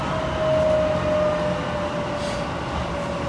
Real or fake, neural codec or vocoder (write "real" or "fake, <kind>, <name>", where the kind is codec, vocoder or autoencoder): real